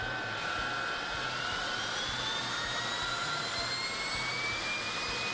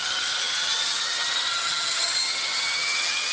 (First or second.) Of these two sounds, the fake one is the second